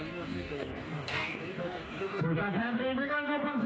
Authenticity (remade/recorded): remade